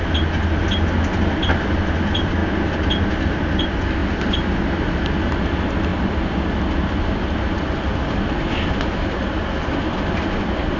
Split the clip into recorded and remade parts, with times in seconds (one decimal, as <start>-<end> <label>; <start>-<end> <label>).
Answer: 0.0-10.8 recorded

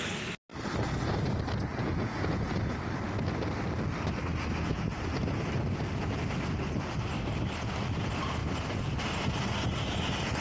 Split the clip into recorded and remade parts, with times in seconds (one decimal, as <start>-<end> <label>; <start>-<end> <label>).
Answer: 0.0-1.7 recorded; 1.7-2.6 remade; 2.6-10.4 recorded

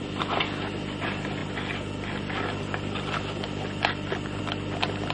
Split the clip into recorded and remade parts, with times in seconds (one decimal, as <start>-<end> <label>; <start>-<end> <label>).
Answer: 0.0-5.1 recorded

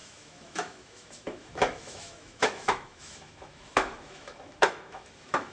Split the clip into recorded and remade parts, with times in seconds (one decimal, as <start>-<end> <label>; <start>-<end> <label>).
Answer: 0.0-5.5 remade

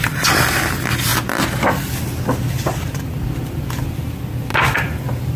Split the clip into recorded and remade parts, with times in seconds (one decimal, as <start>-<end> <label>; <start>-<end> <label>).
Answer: 0.0-1.1 recorded; 1.1-3.8 remade; 3.8-5.4 recorded

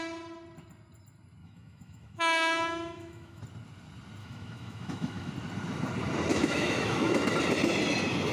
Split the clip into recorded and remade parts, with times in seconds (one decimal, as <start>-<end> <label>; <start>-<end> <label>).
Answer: 0.0-1.4 recorded; 1.4-3.4 remade; 3.4-4.2 recorded; 4.2-5.3 remade; 5.3-6.3 recorded; 6.3-7.3 remade; 7.3-8.3 recorded

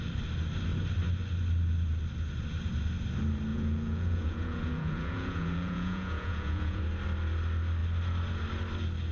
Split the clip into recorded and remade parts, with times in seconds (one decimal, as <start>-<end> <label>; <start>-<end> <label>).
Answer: 0.0-3.5 recorded; 3.5-6.8 remade; 6.8-9.1 recorded